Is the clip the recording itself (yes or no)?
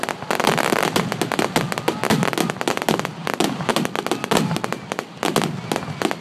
yes